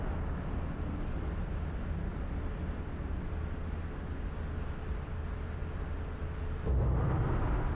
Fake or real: real